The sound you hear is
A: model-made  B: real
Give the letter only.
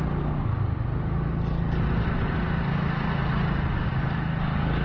B